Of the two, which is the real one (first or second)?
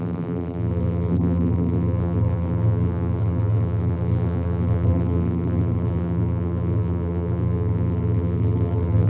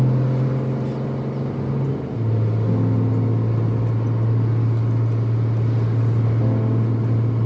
second